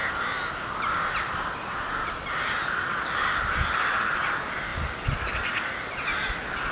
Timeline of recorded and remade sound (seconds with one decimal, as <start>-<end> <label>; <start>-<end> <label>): 0.0-6.7 recorded